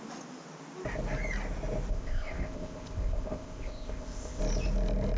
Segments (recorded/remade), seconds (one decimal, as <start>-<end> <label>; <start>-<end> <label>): 0.0-1.9 recorded; 1.9-4.4 remade; 4.4-5.2 recorded